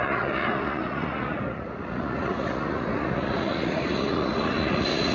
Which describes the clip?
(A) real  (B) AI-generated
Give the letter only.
B